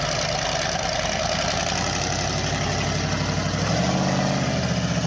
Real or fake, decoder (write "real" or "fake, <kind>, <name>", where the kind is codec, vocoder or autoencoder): real